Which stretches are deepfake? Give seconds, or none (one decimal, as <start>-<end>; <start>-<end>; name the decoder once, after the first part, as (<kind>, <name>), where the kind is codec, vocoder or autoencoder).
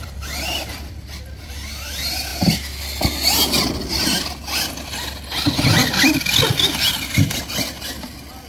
0.0-2.3 (vocoder, BigVGAN v2); 6.8-8.5